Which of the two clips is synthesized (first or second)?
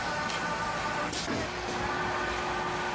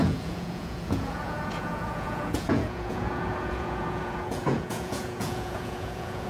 second